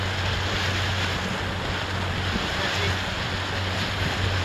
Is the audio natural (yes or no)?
yes